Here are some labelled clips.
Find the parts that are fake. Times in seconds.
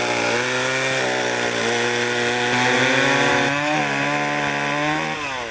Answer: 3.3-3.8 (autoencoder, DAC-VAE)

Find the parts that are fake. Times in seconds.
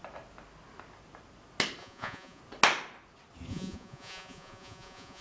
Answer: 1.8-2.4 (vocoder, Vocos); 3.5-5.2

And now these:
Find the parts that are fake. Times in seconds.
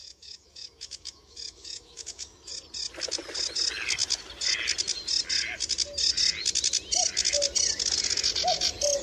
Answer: 0.0-2.5 (autoencoder, DAC-VAE)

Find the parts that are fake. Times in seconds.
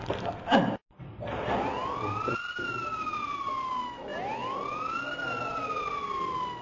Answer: 1.8-3.5 (vocoder, BigVGAN v2); 5.5-6.1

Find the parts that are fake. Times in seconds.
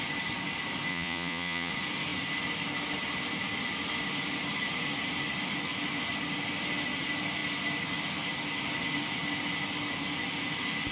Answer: 0.9-1.7 (vocoder, Vocos)